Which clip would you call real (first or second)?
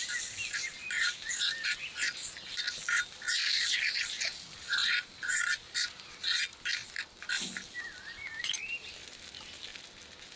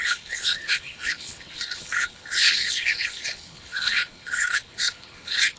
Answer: first